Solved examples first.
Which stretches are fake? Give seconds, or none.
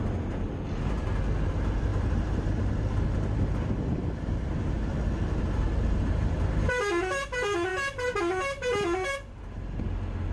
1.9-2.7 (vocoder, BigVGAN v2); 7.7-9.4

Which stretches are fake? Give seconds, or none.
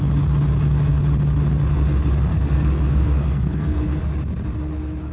2.3-4.0 (codec, SNAC)